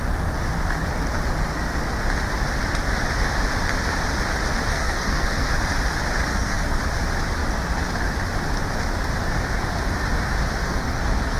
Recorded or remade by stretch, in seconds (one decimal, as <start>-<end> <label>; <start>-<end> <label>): 0.0-4.7 recorded; 4.7-5.5 remade; 5.5-6.3 recorded; 6.3-6.8 remade; 6.8-10.6 recorded; 10.6-11.4 remade